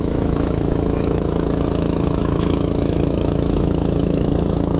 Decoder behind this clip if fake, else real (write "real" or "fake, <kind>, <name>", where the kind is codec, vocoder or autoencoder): fake, autoencoder, DAC-VAE